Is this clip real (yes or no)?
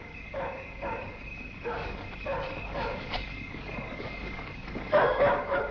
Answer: no